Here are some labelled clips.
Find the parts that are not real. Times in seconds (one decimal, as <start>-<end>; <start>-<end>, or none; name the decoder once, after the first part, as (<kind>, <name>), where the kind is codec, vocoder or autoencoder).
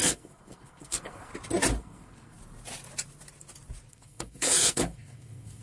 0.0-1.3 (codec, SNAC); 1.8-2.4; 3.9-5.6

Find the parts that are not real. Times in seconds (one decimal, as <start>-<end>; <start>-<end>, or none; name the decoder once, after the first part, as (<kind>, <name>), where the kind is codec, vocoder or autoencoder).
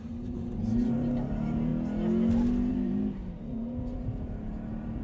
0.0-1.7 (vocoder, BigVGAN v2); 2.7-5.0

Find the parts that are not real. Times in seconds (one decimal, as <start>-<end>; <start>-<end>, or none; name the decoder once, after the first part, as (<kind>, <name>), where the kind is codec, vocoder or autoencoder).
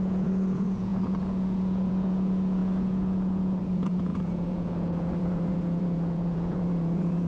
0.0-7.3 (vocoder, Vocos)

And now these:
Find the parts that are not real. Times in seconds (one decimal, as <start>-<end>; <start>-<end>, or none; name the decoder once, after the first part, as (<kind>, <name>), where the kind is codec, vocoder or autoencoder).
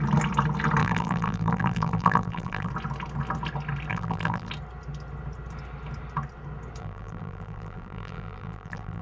0.8-2.7 (vocoder, BigVGAN v2); 3.9-4.5; 6.8-9.0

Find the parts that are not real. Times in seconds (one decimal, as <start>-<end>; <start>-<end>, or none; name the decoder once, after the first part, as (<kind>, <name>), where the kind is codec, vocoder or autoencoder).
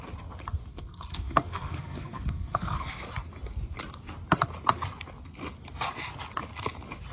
0.7-2.9 (codec, SNAC)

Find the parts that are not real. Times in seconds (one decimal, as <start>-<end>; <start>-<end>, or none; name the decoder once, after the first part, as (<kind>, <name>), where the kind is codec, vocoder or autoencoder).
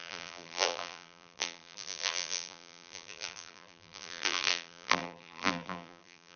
0.0-6.4 (vocoder, BigVGAN v2)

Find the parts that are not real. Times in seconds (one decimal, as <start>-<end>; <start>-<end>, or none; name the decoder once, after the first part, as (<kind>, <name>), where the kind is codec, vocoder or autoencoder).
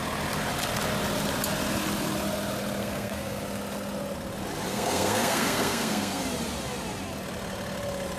2.8-3.4 (codec, SNAC); 4.7-6.2